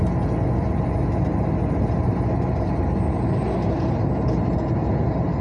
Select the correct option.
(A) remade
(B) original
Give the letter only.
B